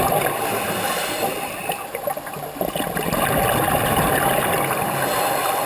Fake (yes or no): no